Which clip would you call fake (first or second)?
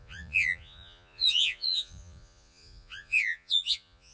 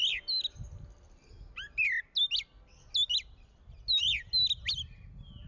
first